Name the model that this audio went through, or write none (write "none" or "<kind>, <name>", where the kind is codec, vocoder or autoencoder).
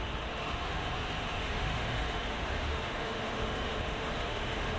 autoencoder, DAC-VAE